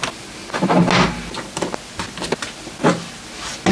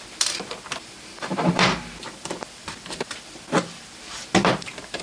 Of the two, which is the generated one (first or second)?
second